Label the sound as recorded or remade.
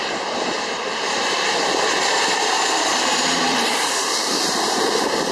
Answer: remade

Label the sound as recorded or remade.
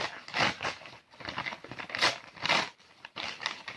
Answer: recorded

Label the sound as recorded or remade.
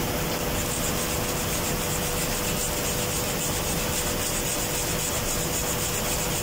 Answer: recorded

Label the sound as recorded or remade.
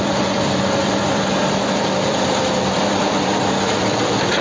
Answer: remade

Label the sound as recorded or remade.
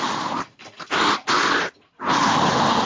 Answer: remade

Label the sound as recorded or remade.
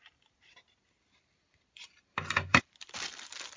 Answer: remade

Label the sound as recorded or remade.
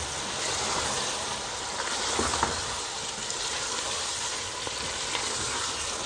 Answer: recorded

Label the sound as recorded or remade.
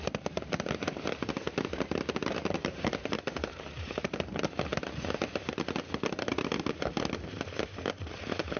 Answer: remade